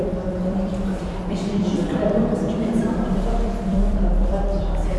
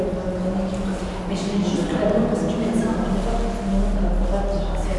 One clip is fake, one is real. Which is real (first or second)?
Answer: second